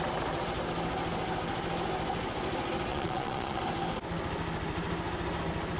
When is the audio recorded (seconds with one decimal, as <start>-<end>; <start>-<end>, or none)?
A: 0.0-2.9; 3.6-5.8